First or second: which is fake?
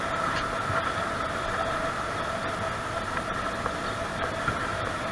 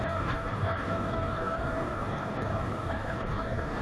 second